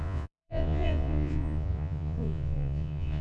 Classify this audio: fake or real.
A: fake